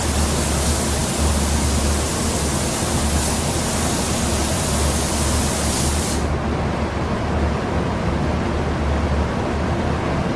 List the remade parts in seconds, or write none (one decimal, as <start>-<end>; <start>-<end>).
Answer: none